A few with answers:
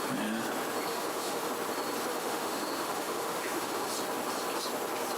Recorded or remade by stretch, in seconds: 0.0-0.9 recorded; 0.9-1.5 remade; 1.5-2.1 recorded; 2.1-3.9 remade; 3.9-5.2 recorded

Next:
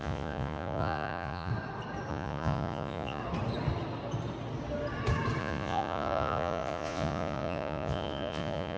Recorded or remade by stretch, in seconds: 0.0-1.5 remade; 1.5-2.1 recorded; 2.1-3.2 remade; 3.2-5.4 recorded; 5.4-8.8 remade

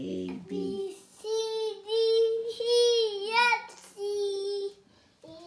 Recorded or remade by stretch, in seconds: 0.0-0.8 recorded; 0.8-1.4 remade; 1.4-5.5 recorded

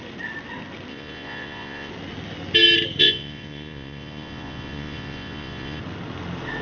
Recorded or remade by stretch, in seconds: 0.0-0.9 recorded; 0.9-1.9 remade; 1.9-3.0 recorded; 3.0-5.8 remade; 5.8-6.6 recorded

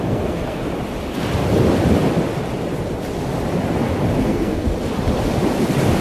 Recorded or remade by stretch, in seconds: 0.0-0.6 remade; 0.6-4.2 recorded; 4.2-4.7 remade; 4.7-6.0 recorded